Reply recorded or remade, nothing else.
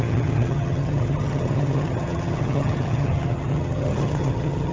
remade